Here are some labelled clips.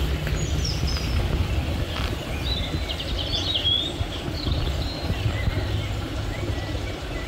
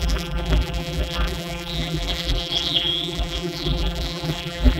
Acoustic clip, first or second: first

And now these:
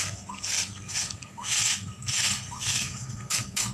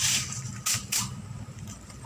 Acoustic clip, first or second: second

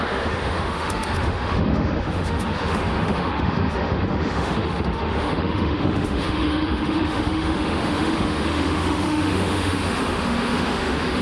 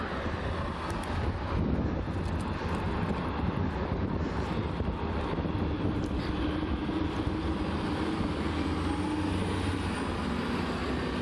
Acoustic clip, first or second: second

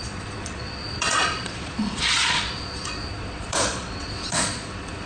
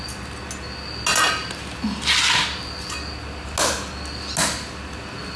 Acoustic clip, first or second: second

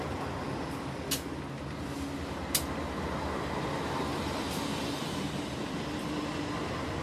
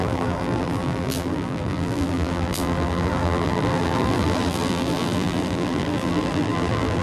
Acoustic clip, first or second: first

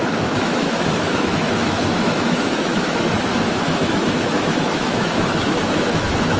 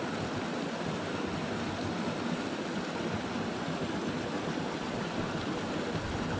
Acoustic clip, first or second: second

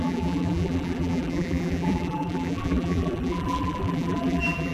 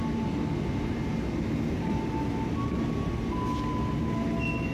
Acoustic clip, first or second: second